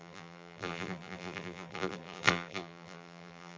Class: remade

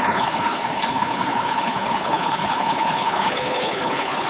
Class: remade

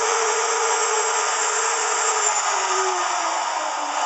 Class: remade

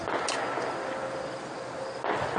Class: recorded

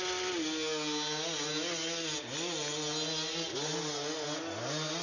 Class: recorded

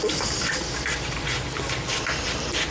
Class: remade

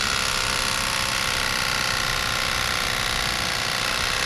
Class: recorded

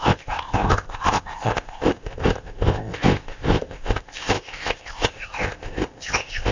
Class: remade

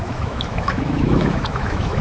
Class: remade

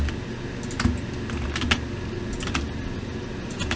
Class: recorded